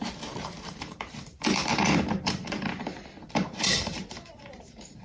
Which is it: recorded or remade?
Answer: remade